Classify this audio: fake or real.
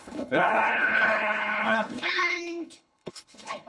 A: fake